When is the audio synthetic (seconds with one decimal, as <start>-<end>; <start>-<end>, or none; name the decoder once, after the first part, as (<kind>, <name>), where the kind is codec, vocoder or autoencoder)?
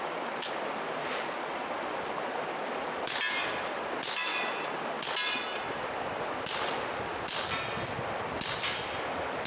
none